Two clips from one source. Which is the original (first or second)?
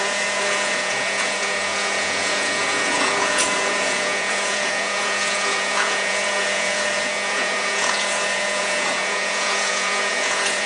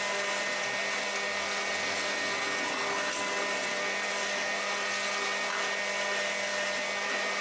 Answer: second